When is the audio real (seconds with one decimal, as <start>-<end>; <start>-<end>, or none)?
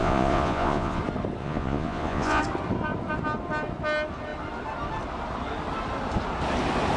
1.0-1.4; 2.4-7.0